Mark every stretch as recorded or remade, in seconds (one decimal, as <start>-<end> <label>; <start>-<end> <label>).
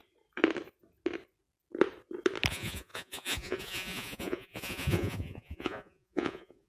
0.0-2.5 recorded; 2.5-6.7 remade